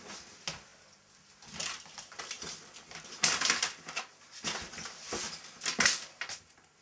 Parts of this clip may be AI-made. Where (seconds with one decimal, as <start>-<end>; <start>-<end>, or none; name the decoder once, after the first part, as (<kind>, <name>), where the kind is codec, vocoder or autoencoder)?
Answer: none